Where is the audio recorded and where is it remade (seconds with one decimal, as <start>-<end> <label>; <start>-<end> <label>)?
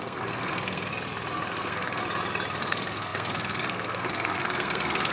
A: 0.0-0.9 remade; 0.9-1.5 recorded; 1.5-2.0 remade; 2.0-2.6 recorded; 2.6-5.1 remade